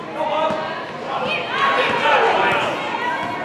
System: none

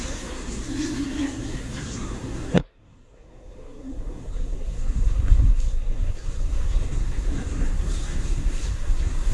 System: codec, SNAC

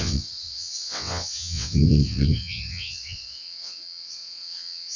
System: vocoder, WaveNeXt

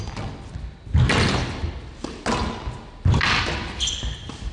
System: none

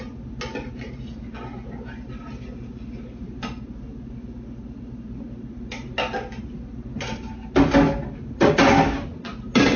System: none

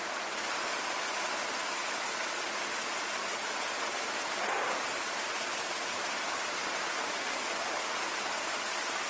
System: none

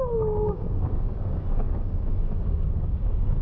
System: codec, DAC